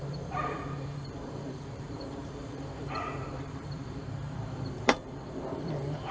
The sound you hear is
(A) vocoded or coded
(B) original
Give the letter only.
A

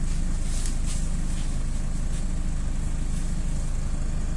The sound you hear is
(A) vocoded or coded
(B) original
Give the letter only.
B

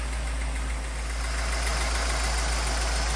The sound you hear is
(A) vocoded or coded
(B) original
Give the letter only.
B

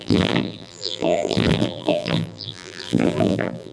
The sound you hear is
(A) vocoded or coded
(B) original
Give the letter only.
A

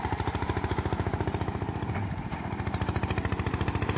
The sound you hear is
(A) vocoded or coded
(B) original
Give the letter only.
A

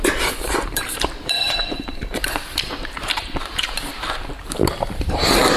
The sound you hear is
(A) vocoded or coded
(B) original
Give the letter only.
A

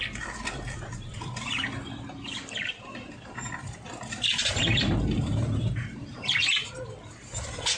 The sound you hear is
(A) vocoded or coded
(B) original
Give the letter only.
A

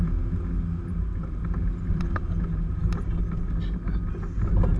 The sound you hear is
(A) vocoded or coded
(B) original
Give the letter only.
B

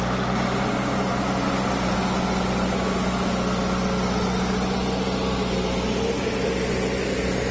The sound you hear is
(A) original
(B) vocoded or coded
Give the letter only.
A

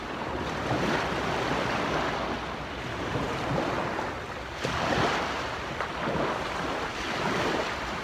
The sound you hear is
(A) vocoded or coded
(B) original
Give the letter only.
B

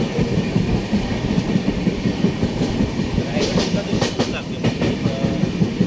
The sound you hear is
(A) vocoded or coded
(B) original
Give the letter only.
B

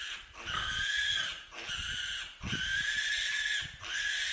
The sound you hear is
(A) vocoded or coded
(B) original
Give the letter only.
A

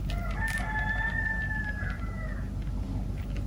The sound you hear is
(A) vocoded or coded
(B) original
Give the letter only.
B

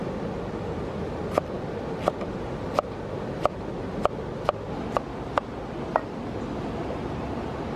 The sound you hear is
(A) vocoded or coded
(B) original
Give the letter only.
B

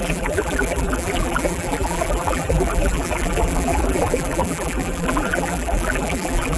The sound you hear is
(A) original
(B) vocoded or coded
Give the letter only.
B